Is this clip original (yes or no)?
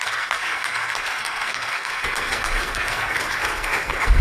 no